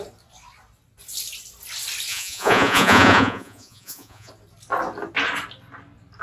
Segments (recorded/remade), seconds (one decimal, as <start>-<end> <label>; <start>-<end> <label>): 0.0-2.1 recorded; 2.1-4.3 remade; 4.3-6.2 recorded